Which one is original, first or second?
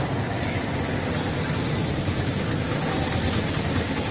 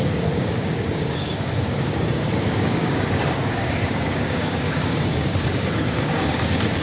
first